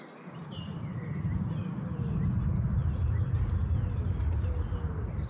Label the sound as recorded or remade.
remade